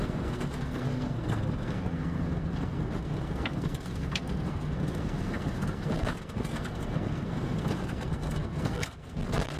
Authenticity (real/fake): fake